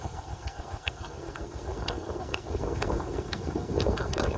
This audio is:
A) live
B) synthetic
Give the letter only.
B